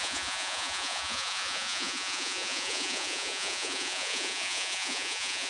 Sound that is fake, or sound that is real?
fake